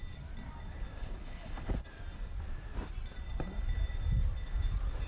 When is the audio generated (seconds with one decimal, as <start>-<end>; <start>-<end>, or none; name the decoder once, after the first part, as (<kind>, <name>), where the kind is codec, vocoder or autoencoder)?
1.0-1.7 (codec, HILCodec)